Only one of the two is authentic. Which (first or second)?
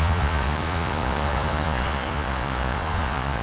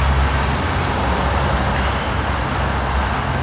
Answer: second